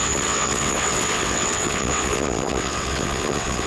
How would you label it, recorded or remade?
remade